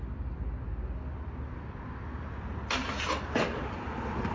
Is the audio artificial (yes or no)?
no